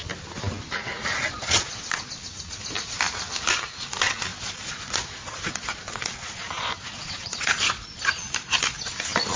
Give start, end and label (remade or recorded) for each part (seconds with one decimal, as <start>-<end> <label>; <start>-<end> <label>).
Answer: 0.0-1.3 recorded; 1.3-2.1 remade; 2.1-4.3 recorded; 4.3-8.1 remade; 8.1-9.4 recorded